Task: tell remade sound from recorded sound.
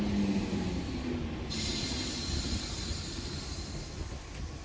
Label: recorded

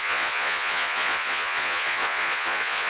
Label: remade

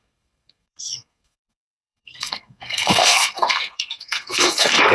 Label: remade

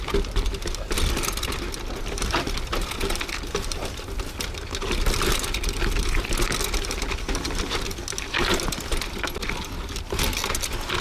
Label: recorded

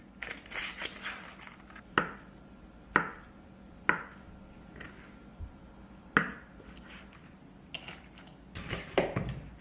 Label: recorded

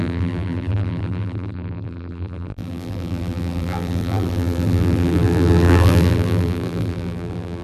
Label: remade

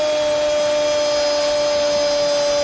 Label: recorded